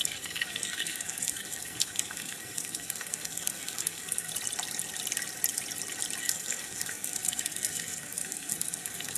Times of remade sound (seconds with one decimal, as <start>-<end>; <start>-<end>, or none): 0.0-4.3; 6.2-9.2